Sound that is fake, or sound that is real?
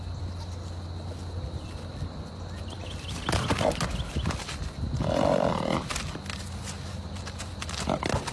real